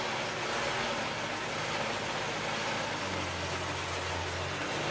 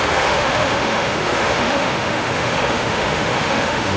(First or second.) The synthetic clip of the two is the second